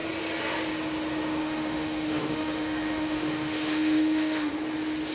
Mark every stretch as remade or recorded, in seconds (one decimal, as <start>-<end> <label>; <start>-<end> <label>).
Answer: 0.0-1.4 recorded; 1.4-4.5 remade; 4.5-5.1 recorded